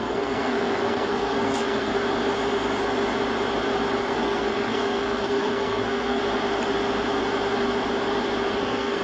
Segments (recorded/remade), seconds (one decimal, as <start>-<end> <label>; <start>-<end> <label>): 0.0-1.9 remade; 1.9-4.0 recorded; 4.0-6.2 remade; 6.2-8.5 recorded; 8.5-9.0 remade